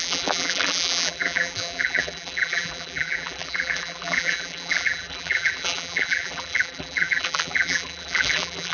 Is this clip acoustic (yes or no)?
no